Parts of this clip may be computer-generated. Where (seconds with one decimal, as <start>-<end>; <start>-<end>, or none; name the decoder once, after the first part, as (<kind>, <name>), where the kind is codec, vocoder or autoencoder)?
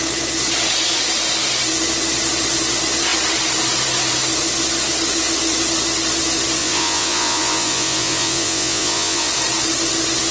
6.6-9.3 (vocoder, Vocos)